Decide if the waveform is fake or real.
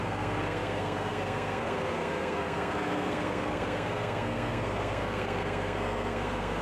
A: fake